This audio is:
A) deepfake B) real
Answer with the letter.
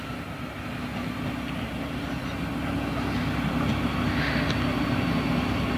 B